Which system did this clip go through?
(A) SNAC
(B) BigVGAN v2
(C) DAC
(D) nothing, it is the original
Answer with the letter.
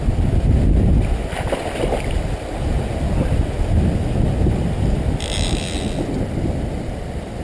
D